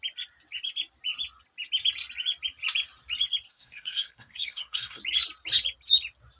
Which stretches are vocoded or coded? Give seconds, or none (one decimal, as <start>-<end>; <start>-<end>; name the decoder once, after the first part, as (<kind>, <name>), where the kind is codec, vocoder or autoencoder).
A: 3.5-5.0 (codec, SNAC)